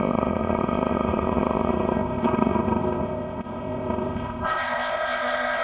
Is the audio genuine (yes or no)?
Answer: no